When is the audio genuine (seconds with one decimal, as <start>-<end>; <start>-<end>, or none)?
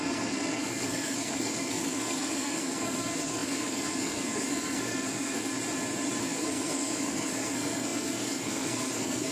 5.5-6.2